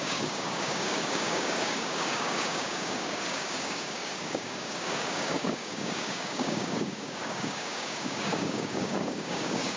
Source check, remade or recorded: remade